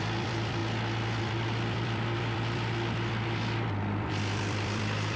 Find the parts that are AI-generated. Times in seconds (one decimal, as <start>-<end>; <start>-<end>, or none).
0.0-0.6; 1.2-5.2